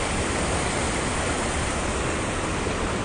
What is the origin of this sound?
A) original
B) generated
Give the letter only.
A